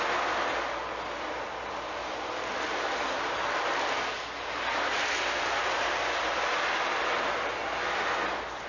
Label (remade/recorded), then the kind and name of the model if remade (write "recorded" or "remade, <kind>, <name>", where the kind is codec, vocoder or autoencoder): recorded